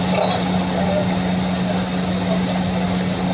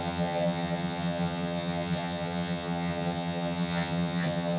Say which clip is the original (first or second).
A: first